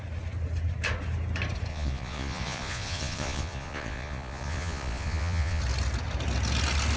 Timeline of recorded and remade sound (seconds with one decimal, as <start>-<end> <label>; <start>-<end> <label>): 0.0-1.7 recorded; 1.7-5.6 remade; 5.6-7.0 recorded